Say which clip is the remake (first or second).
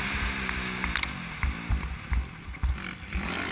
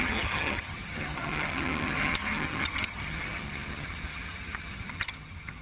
second